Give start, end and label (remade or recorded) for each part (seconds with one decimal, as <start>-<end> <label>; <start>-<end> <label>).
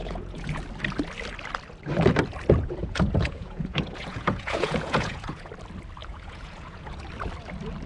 0.0-0.6 remade; 0.6-2.8 recorded; 2.8-5.5 remade; 5.5-6.0 recorded; 6.0-7.0 remade; 7.0-7.9 recorded